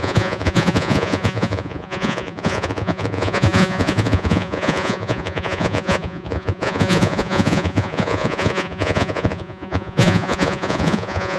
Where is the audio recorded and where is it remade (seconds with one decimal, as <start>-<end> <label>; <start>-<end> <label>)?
0.0-11.4 remade

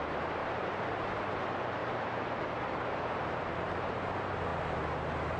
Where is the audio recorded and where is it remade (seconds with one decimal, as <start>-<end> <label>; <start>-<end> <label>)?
0.0-1.8 recorded; 1.8-4.0 remade; 4.0-4.5 recorded; 4.5-5.4 remade

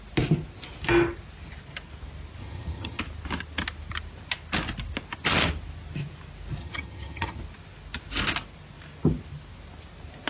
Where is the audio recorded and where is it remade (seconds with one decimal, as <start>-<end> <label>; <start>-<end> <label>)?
0.0-2.4 recorded; 2.4-3.0 remade; 3.0-6.6 recorded; 6.6-7.4 remade; 7.4-10.3 recorded

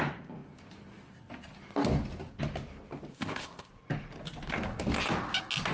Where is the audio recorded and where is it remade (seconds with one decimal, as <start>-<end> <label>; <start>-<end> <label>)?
0.0-3.1 recorded; 3.1-3.7 remade; 3.7-5.7 recorded

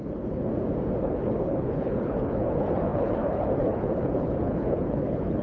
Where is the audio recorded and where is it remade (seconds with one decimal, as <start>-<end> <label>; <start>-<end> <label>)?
0.0-0.5 remade; 0.5-1.0 recorded; 1.0-5.4 remade